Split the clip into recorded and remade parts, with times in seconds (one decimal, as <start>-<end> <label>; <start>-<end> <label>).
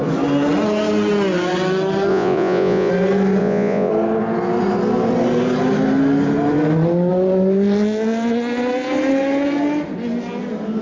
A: 0.0-2.1 recorded; 2.1-2.9 remade; 2.9-3.4 recorded; 3.4-3.9 remade; 3.9-10.8 recorded